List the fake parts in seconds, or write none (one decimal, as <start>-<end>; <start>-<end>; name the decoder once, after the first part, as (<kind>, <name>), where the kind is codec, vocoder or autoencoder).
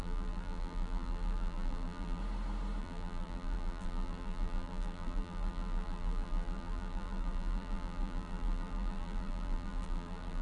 0.0-2.2 (vocoder, BigVGAN v2); 2.8-10.4